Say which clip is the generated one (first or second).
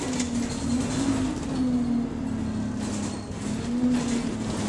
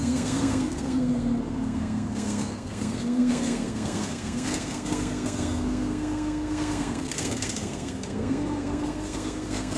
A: second